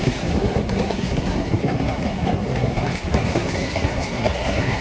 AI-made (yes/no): yes